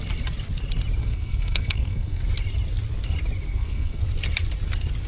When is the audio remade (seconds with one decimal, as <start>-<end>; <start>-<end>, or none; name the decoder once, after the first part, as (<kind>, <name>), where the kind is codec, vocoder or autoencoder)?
1.0-2.2 (codec, SNAC); 3.5-4.0